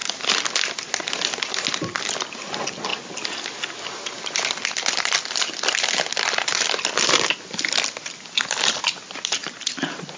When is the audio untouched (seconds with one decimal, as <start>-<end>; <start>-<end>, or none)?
0.0-9.4